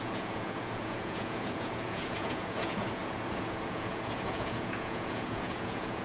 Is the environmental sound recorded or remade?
remade